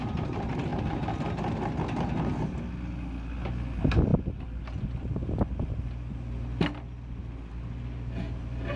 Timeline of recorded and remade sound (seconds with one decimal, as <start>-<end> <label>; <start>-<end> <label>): 0.0-8.8 recorded